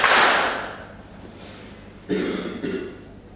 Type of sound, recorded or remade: recorded